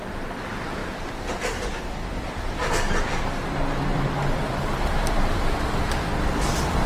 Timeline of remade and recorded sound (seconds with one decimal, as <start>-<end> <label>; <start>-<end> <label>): 0.0-3.9 recorded; 3.9-6.4 remade; 6.4-6.9 recorded